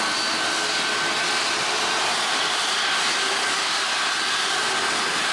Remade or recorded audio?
recorded